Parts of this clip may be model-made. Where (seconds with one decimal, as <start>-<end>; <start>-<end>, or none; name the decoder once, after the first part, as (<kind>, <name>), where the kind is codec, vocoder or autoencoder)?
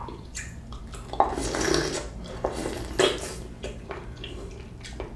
0.0-0.8 (vocoder, Vocos)